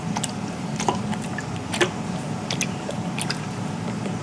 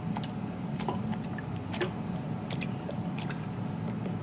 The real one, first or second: second